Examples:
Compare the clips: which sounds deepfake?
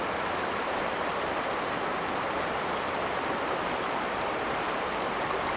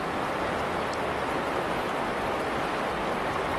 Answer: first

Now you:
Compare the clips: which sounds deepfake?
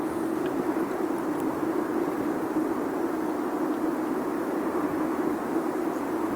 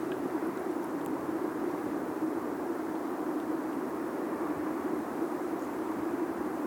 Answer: second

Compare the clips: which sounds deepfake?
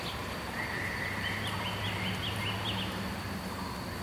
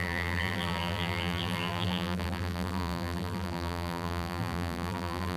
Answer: second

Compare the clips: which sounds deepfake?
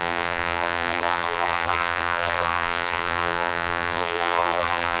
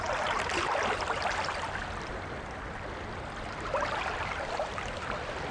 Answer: first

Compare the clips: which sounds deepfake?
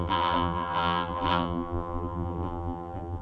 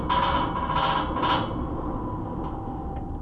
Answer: first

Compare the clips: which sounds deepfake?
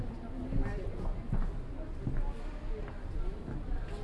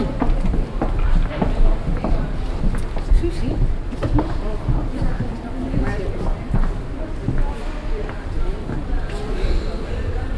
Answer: second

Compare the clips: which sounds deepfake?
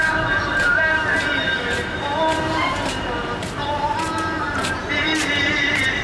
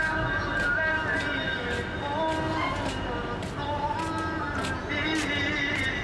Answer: first